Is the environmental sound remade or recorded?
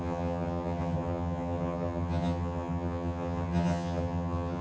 remade